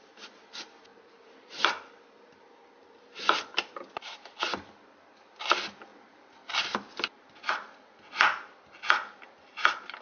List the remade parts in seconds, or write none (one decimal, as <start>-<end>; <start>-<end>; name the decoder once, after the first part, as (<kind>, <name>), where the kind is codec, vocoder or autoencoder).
0.9-5.4 (vocoder, BigVGAN v2); 5.9-7.5